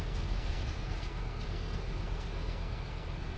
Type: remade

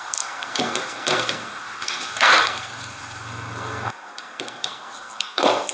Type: remade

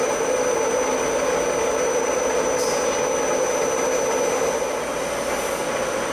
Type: recorded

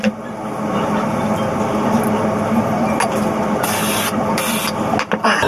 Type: recorded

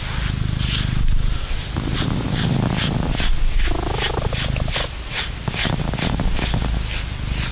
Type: recorded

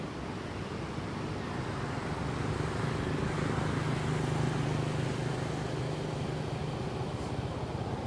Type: recorded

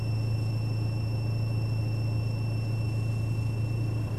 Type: recorded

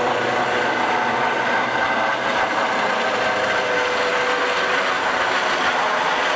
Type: recorded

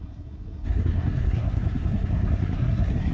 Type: remade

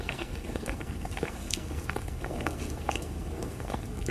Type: remade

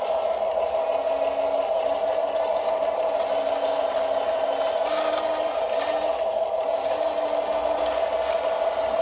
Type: recorded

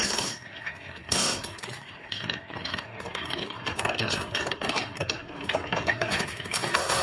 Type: remade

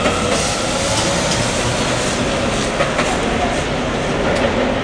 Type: recorded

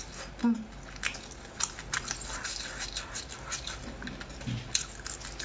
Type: recorded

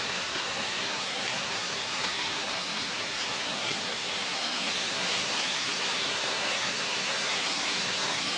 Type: remade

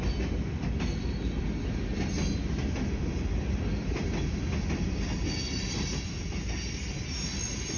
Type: recorded